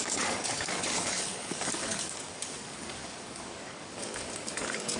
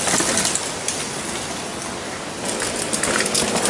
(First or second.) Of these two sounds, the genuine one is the second